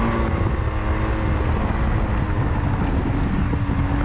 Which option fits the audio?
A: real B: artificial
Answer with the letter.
A